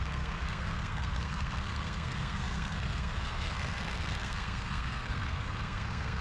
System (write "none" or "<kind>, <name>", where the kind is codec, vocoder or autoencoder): codec, SNAC